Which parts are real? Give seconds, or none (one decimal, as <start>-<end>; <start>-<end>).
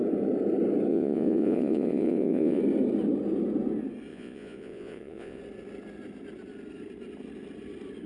0.0-0.9; 2.6-4.1; 5.4-8.1